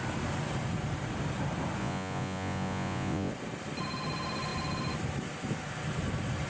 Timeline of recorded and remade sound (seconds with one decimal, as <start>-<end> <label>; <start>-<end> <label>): 0.0-1.8 recorded; 1.8-3.3 remade; 3.3-6.5 recorded